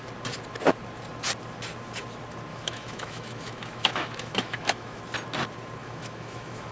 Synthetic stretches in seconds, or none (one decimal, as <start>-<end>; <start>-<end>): 2.5-5.0; 5.8-6.7